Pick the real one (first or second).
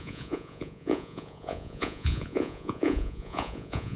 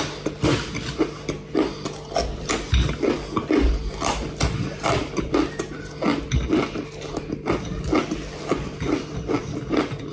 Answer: second